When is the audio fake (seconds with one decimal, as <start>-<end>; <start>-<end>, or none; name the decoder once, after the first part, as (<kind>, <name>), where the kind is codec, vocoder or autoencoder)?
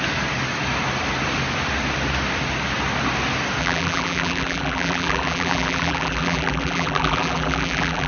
3.6-8.1 (vocoder, BigVGAN v2)